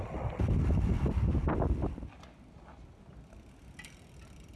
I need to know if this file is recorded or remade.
recorded